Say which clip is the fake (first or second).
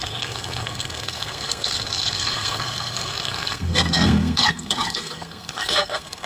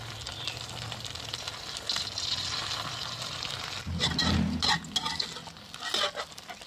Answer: first